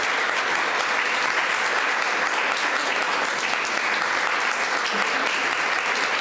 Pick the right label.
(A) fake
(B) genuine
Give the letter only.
B